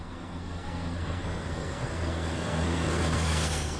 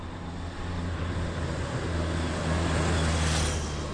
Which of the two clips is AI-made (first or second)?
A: first